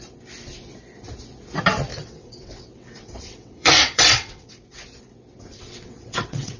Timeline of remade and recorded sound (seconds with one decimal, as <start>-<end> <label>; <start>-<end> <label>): 0.0-1.9 recorded; 1.9-4.8 remade; 4.8-5.5 recorded; 5.5-6.6 remade